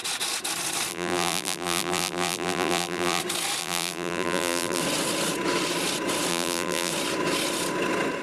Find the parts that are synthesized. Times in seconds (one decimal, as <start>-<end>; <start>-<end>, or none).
0.9-3.2; 3.6-4.8; 6.3-6.9